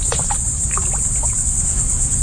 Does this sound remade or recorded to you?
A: recorded